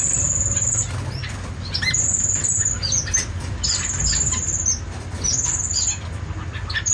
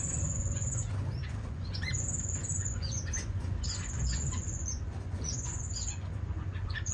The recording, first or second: first